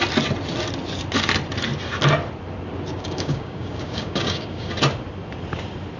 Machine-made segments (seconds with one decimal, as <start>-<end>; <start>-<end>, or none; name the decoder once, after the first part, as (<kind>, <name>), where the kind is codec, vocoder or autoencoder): 2.9-4.7 (codec, DAC)